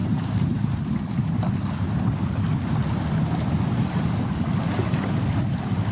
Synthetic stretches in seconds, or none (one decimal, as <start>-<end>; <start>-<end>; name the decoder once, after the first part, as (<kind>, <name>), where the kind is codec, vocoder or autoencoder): 0.0-0.8 (vocoder, BigVGAN v2)